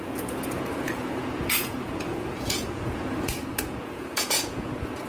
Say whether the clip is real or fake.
fake